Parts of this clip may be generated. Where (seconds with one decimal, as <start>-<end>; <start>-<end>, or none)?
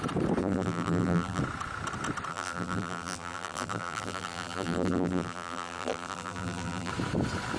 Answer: 0.4-1.4; 2.3-6.9